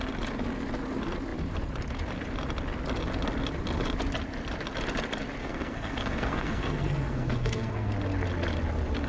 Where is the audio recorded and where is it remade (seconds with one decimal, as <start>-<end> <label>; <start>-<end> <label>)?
0.0-5.4 recorded; 5.4-7.9 remade; 7.9-9.1 recorded